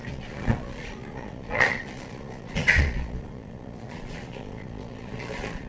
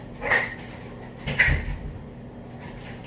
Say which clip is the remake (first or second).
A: first